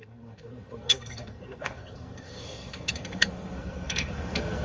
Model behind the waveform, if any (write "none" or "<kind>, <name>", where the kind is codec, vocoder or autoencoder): codec, SNAC